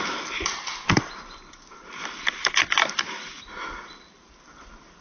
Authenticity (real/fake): fake